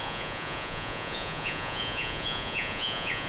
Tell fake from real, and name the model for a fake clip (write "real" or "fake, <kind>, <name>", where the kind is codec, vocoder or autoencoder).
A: fake, vocoder, Vocos